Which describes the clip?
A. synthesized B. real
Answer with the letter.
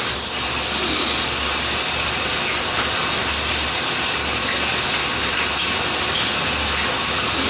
B